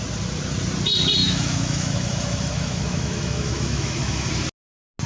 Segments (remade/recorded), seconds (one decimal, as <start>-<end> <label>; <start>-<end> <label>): 0.0-1.2 recorded; 1.2-4.3 remade; 4.3-5.1 recorded

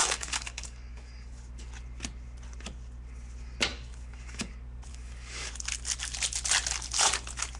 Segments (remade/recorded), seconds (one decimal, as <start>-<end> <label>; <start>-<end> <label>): 0.0-1.5 remade; 1.5-3.7 recorded; 3.7-4.5 remade; 4.5-4.9 recorded; 4.9-5.5 remade; 5.5-7.6 recorded

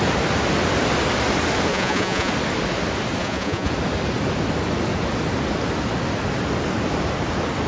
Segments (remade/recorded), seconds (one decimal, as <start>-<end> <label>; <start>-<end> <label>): 0.0-1.7 recorded; 1.7-2.3 remade; 2.3-3.2 recorded; 3.2-3.7 remade; 3.7-7.7 recorded